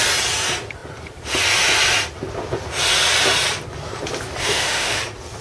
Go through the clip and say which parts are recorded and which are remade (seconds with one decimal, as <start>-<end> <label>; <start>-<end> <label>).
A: 0.0-4.4 recorded; 4.4-5.0 remade; 5.0-5.4 recorded